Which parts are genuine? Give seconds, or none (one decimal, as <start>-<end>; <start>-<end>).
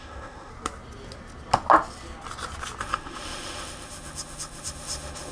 0.5-2.8